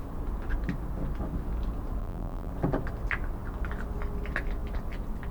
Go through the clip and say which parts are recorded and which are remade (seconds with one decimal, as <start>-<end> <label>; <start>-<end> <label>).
0.0-2.0 recorded; 2.0-2.5 remade; 2.5-5.3 recorded